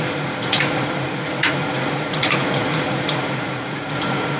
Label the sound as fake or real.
fake